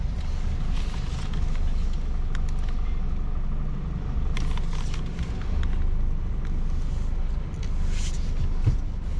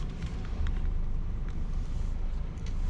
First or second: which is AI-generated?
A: second